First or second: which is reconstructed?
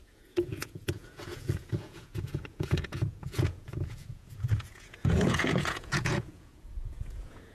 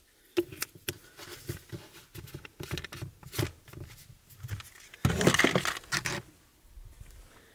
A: first